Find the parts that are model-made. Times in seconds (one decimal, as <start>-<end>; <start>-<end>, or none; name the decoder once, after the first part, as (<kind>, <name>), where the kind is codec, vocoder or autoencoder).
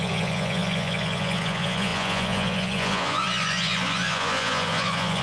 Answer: 0.0-5.2 (vocoder, Vocos)